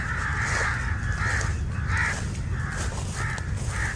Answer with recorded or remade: recorded